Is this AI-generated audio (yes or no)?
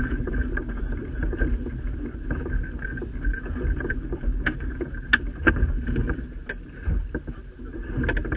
no